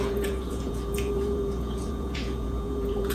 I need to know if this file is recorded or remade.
remade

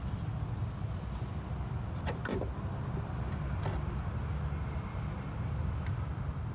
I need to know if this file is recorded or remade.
recorded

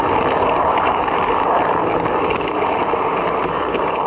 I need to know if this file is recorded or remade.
recorded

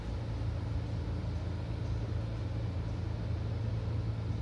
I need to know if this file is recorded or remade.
recorded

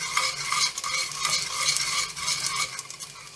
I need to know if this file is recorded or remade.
recorded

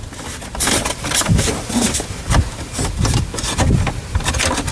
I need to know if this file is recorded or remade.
recorded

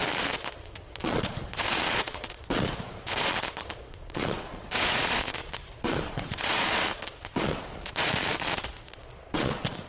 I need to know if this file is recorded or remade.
remade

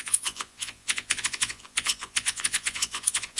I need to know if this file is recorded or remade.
remade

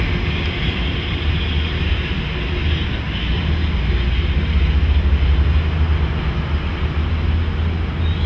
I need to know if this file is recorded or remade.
recorded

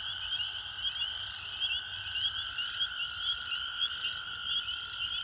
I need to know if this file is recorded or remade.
recorded